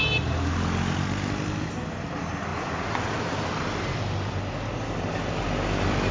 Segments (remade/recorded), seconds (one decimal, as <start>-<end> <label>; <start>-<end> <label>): 0.0-6.1 recorded